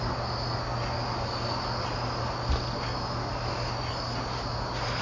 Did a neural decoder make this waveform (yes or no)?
no